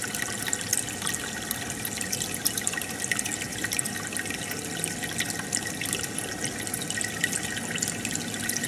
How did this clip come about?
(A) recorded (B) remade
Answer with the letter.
A